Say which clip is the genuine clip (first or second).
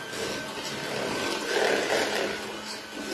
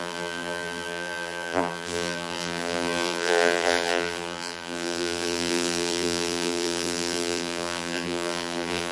first